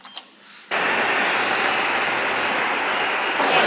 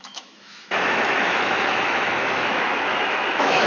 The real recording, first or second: first